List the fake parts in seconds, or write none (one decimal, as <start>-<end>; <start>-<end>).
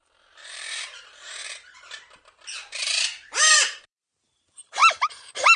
0.0-4.8